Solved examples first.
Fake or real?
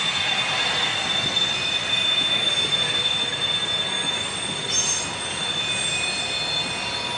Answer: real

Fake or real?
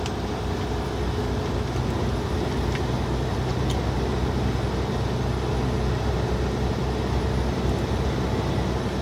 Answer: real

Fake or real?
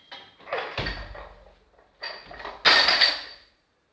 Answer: real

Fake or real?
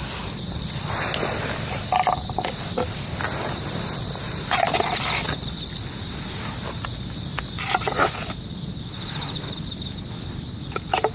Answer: fake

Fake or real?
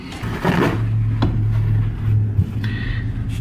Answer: real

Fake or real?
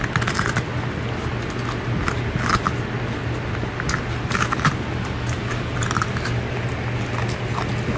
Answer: real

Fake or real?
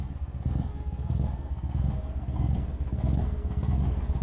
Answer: fake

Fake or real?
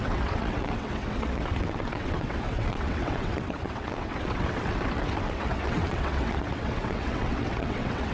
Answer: fake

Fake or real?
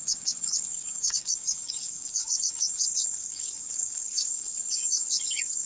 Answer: fake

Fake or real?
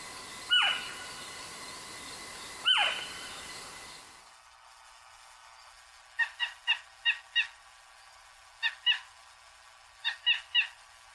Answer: real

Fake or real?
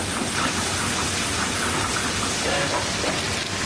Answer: real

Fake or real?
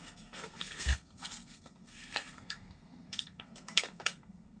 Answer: fake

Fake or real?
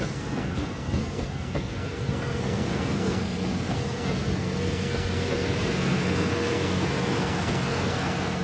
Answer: fake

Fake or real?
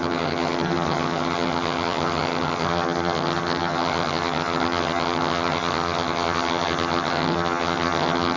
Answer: fake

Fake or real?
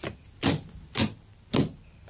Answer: real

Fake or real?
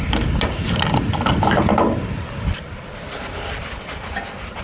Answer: real